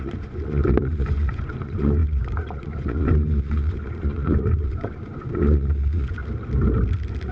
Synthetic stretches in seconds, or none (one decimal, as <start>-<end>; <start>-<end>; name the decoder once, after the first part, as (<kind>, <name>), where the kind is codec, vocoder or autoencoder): 0.0-6.2 (vocoder, Vocos)